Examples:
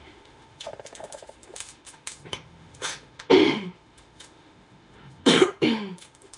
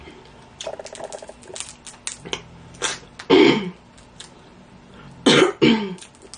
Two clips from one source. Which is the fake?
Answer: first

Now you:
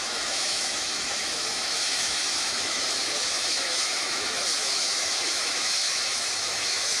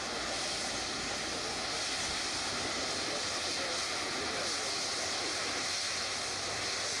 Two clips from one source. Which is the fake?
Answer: first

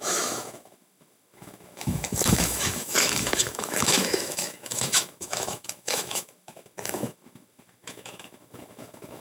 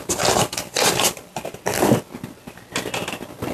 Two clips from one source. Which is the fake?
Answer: first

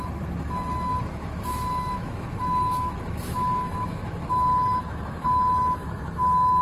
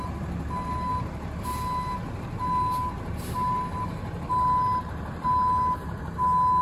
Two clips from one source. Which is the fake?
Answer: first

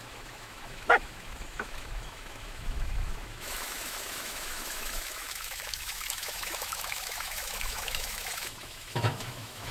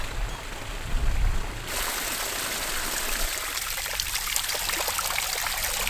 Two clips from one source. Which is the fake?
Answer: first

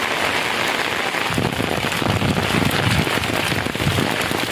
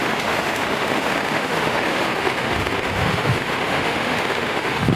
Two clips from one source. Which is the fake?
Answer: second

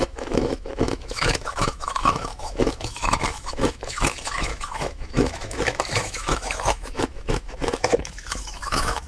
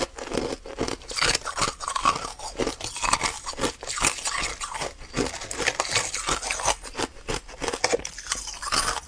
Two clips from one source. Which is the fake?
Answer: first